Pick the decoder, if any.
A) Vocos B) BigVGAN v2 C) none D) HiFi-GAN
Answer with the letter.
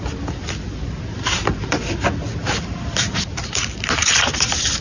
C